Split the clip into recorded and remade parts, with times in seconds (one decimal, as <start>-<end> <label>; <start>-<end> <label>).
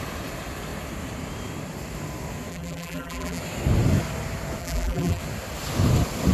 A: 0.0-2.5 recorded; 2.5-3.4 remade; 3.4-4.6 recorded; 4.6-5.2 remade; 5.2-6.3 recorded